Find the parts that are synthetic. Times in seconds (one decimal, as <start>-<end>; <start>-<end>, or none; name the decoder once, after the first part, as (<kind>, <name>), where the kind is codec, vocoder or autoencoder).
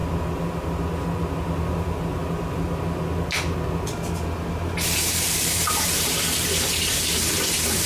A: 4.5-7.9 (vocoder, BigVGAN v2)